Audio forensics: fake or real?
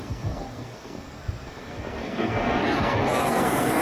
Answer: fake